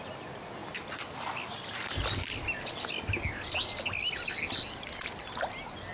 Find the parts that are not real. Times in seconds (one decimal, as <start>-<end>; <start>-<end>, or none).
none